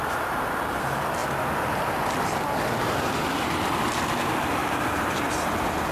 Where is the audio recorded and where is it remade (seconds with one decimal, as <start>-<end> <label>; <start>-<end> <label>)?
0.0-5.9 recorded

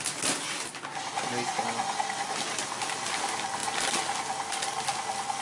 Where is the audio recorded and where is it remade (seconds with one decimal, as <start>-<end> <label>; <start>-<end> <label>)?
0.0-5.4 recorded

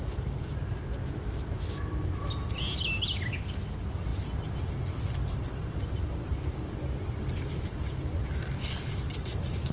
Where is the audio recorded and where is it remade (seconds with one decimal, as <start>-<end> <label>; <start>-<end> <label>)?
0.0-1.0 recorded; 1.0-2.3 remade; 2.3-9.7 recorded